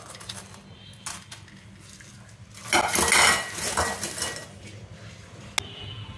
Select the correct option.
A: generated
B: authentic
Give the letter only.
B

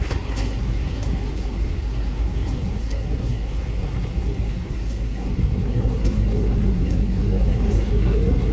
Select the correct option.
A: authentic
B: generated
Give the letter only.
B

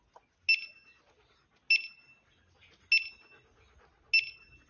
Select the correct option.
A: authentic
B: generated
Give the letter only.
A